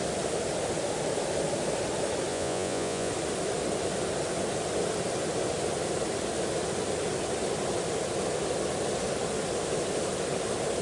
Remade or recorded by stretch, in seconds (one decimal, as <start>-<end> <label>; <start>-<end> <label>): 0.0-2.3 recorded; 2.3-3.1 remade; 3.1-10.8 recorded